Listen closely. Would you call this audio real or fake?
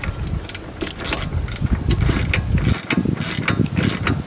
real